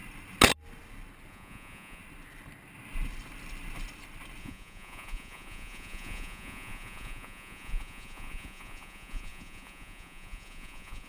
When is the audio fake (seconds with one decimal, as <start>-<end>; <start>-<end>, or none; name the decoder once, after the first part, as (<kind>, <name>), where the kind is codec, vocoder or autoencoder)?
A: 1.3-2.0 (vocoder, Vocos); 4.4-11.1